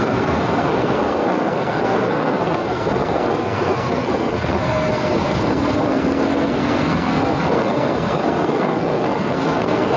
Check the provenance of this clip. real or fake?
fake